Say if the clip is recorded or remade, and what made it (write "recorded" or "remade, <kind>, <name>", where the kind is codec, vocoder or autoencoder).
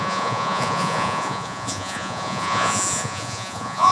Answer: remade, vocoder, Vocos